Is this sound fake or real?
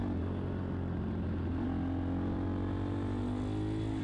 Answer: real